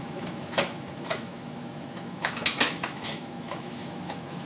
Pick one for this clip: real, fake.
fake